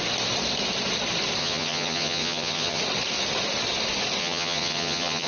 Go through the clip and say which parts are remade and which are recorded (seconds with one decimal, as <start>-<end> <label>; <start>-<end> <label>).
0.0-1.4 recorded; 1.4-2.8 remade; 2.8-4.2 recorded; 4.2-5.3 remade